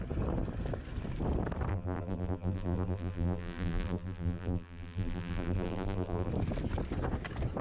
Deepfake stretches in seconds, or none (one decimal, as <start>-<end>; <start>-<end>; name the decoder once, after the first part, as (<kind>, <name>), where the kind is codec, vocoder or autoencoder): 1.7-6.3 (vocoder, BigVGAN v2)